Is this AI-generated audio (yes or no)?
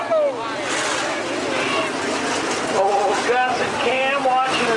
no